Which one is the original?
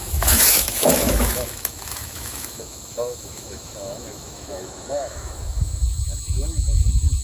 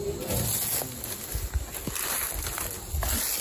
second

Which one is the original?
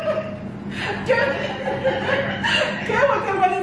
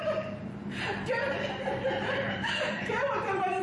first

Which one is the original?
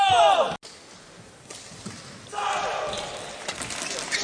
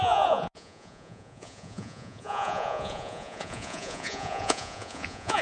first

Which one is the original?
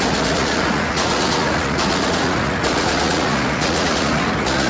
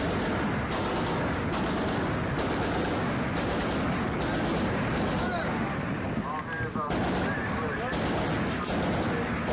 second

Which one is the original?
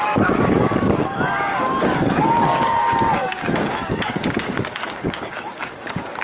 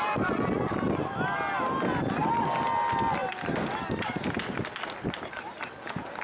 second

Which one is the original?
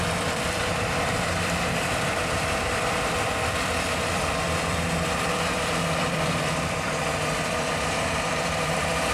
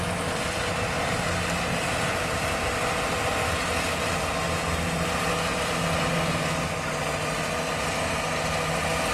second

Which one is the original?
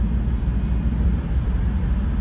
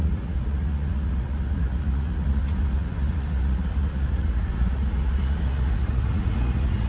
first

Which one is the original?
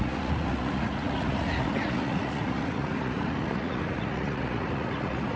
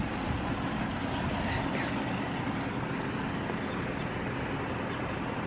second